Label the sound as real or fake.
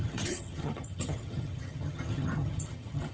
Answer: fake